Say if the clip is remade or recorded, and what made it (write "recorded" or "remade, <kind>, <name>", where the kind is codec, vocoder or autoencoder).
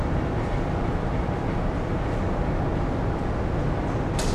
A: recorded